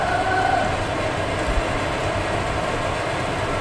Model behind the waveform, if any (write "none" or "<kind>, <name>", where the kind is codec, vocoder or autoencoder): none